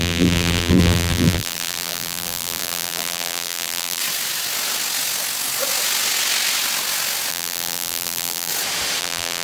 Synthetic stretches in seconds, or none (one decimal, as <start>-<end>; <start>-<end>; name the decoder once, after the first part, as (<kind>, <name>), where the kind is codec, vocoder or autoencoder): 0.0-4.0 (vocoder, BigVGAN v2); 7.3-8.5; 9.0-9.4